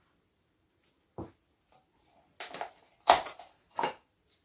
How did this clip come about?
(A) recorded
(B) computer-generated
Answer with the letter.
A